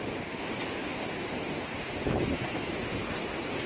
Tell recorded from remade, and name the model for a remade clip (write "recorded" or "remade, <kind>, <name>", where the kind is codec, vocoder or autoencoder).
recorded